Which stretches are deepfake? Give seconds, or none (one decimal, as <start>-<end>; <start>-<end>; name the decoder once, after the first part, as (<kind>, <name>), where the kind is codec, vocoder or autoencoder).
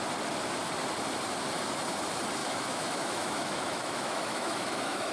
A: 2.4-5.1 (autoencoder, DAC-VAE)